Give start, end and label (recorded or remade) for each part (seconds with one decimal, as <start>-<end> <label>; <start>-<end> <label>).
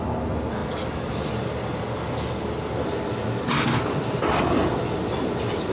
0.0-5.7 recorded